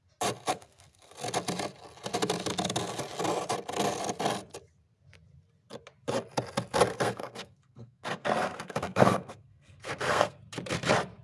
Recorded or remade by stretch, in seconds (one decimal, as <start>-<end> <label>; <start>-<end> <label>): 0.0-0.5 recorded; 0.5-1.1 remade; 1.1-6.9 recorded; 6.9-10.4 remade; 10.4-11.2 recorded